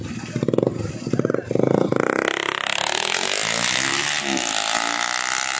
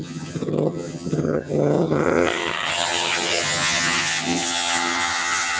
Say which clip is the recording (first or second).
first